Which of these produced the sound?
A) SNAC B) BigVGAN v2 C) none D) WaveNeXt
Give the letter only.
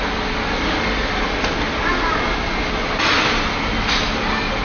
C